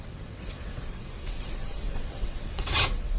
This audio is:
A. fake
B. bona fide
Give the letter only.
A